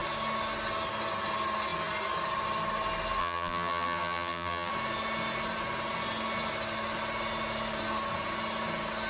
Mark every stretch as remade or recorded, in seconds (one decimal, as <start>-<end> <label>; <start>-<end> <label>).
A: 0.0-3.2 recorded; 3.2-4.7 remade; 4.7-9.1 recorded